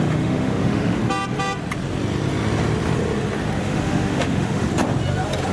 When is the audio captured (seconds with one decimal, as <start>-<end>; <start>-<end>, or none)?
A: 1.0-3.6; 4.7-5.5